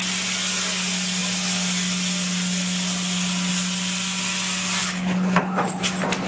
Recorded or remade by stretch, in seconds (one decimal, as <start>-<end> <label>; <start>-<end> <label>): 0.0-4.8 recorded; 4.8-5.8 remade; 5.8-6.3 recorded